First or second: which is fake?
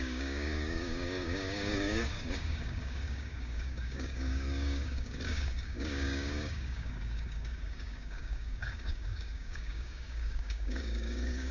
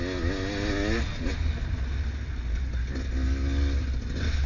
first